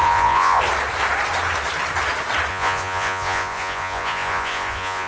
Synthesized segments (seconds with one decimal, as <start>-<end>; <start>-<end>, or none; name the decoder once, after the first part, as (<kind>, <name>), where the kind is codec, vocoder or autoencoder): 0.0-0.6 (vocoder, Vocos); 2.5-5.1